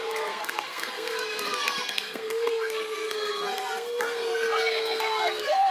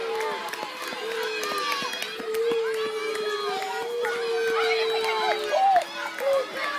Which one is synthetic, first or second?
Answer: first